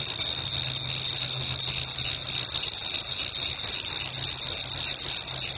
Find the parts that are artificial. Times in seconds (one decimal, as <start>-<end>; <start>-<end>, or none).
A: none